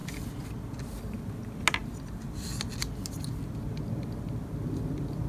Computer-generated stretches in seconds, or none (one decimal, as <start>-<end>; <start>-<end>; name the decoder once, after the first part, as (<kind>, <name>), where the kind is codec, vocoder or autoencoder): none